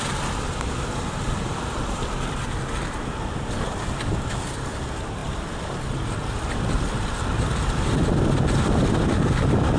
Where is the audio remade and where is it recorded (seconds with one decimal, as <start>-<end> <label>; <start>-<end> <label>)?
0.0-5.2 recorded; 5.2-5.7 remade; 5.7-9.8 recorded